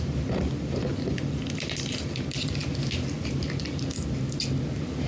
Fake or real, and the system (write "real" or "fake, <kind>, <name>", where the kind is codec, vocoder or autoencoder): real